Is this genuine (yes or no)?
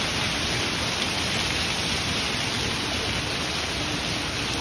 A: yes